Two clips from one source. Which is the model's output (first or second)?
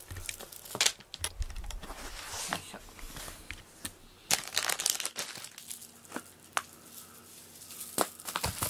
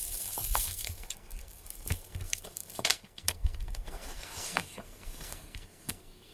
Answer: second